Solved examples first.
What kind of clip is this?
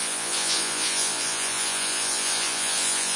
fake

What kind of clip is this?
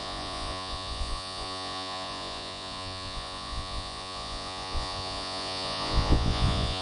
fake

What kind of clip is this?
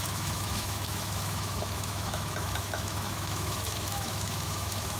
fake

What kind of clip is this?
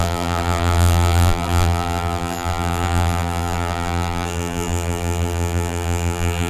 fake